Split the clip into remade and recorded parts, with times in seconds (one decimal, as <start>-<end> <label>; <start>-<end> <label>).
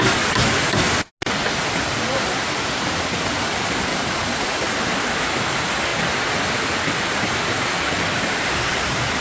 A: 0.0-3.9 recorded; 3.9-4.5 remade; 4.5-9.2 recorded